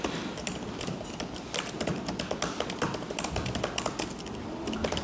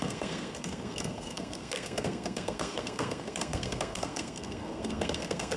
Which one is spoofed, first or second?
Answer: second